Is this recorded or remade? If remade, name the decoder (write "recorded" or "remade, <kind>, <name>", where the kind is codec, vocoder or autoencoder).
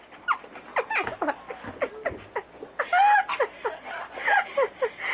recorded